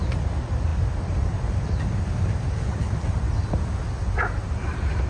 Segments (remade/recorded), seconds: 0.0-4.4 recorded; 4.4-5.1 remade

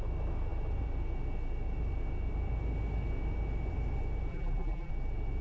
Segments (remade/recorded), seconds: 0.0-4.3 recorded; 4.3-4.9 remade; 4.9-5.4 recorded

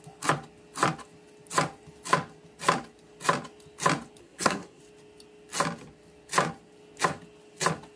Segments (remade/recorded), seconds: 0.0-4.2 recorded; 4.2-4.8 remade; 4.8-8.0 recorded

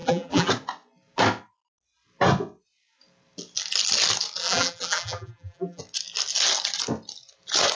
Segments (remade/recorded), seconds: 0.0-0.5 remade; 0.5-4.4 recorded; 4.4-5.8 remade; 5.8-7.8 recorded

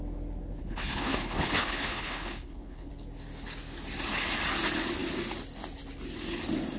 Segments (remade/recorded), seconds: 0.0-0.6 recorded; 0.6-2.9 remade; 2.9-6.8 recorded